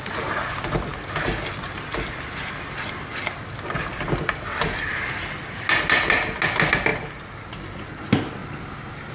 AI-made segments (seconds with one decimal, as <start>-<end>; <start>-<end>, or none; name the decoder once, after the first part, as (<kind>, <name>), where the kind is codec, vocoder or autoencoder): none